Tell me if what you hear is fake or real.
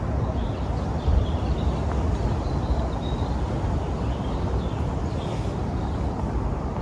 real